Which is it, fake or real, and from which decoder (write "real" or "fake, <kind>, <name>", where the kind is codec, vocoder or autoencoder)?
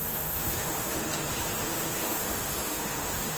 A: fake, autoencoder, DAC-VAE